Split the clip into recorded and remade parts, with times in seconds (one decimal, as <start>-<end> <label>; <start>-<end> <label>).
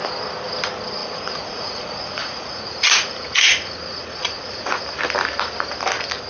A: 0.0-1.0 recorded; 1.0-4.8 remade; 4.8-6.3 recorded